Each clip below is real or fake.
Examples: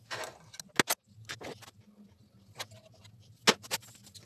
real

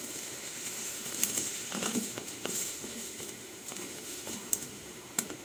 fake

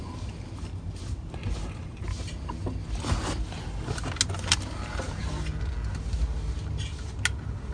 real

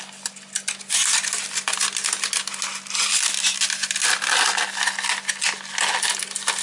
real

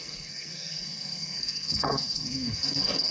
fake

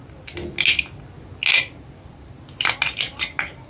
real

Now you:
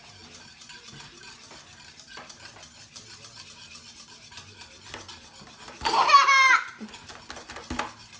real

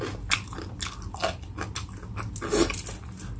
real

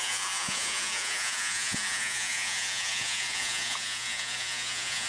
fake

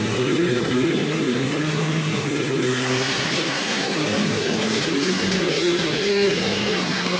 fake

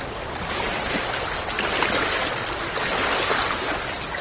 real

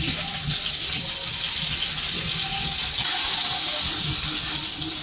real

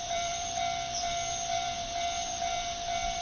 fake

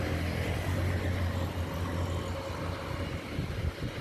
real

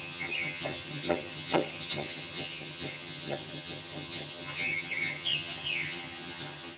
fake